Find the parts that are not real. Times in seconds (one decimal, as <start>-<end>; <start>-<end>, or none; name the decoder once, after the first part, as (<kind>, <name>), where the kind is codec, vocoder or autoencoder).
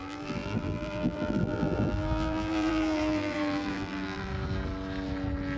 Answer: 0.0-4.3 (vocoder, BigVGAN v2)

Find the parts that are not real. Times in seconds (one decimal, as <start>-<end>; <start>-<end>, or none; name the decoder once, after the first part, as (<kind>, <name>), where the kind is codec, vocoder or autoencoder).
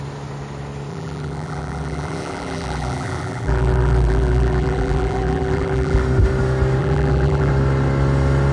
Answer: 0.9-6.0 (vocoder, BigVGAN v2); 6.8-7.5